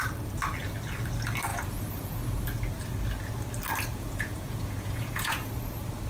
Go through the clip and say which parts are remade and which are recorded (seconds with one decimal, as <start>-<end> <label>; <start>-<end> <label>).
0.0-1.5 recorded; 1.5-2.4 remade; 2.4-3.9 recorded; 3.9-5.5 remade; 5.5-6.1 recorded

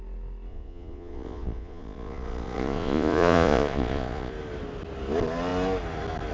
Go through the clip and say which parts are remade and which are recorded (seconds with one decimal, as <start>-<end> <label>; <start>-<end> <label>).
0.0-0.5 recorded; 0.5-4.3 remade; 4.3-6.3 recorded

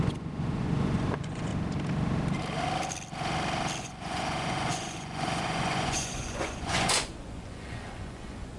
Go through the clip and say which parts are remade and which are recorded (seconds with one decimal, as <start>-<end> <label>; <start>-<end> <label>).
0.0-1.5 remade; 1.5-3.8 recorded; 3.8-8.6 remade

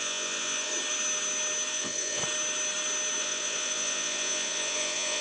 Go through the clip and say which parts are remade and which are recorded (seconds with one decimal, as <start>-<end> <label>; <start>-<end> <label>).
0.0-0.7 remade; 0.7-1.7 recorded; 1.7-2.2 remade; 2.2-3.2 recorded; 3.2-5.2 remade

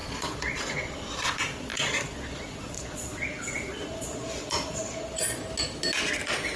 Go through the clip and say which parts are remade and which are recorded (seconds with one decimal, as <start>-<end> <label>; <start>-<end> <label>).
0.0-5.4 remade; 5.4-6.6 recorded

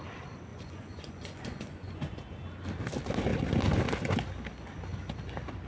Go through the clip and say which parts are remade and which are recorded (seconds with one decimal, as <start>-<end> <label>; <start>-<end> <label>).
0.0-0.5 recorded; 0.5-2.2 remade; 2.2-5.7 recorded